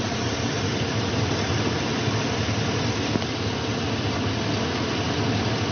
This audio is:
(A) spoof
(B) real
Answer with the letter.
B